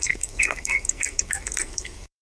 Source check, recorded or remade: remade